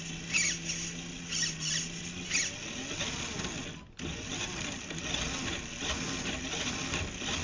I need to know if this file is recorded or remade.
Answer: recorded